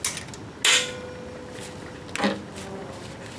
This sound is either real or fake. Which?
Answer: real